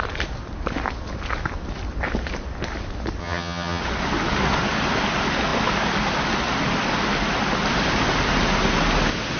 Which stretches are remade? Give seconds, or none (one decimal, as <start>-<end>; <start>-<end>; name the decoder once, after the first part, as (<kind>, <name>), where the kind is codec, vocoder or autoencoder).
3.2-3.8 (vocoder, HiFi-GAN)

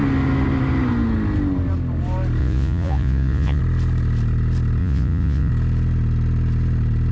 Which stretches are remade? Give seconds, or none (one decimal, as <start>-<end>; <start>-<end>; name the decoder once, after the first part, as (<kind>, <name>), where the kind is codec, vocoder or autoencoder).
2.4-3.6 (vocoder, Vocos); 4.8-5.5

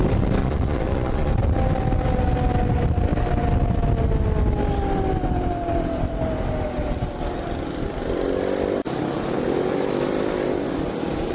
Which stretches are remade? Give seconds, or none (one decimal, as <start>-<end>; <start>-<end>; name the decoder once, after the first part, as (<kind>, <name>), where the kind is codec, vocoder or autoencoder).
0.4-1.3 (vocoder, Vocos)

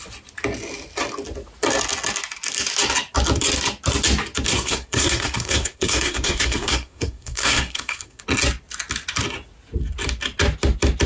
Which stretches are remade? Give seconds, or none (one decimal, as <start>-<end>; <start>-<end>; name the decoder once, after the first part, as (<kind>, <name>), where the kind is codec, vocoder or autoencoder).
4.5-8.2 (codec, SNAC)

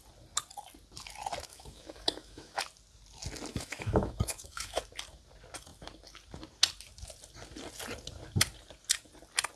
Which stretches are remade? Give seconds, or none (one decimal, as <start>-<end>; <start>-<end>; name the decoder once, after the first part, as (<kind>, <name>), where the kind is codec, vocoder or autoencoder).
1.5-2.6 (autoencoder, DAC-VAE); 3.5-4.8

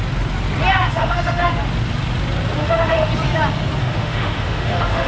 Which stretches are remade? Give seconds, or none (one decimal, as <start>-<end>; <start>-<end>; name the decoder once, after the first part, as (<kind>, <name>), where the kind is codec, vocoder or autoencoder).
0.7-1.5 (autoencoder, DAC-VAE); 2.6-3.1; 3.8-5.1

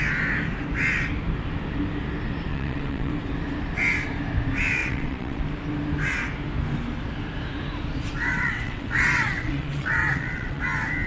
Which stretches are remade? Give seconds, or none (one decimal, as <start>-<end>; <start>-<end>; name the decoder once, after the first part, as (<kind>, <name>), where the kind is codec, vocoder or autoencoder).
2.5-3.1 (vocoder, WaveNeXt); 4.8-5.4; 8.3-10.6

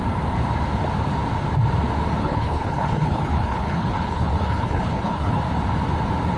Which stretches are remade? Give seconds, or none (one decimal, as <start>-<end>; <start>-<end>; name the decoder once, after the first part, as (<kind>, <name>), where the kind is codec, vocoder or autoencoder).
2.2-5.4 (codec, HILCodec)